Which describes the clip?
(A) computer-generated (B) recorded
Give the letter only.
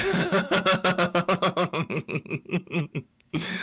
A